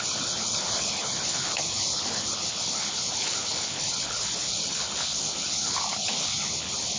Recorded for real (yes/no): no